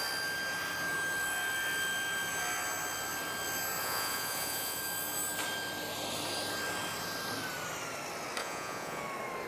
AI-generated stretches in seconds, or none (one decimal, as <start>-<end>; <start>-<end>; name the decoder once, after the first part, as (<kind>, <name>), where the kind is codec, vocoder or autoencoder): 3.8-4.8 (vocoder, Vocos); 8.4-9.0